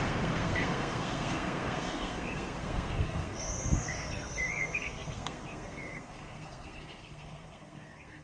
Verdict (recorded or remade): remade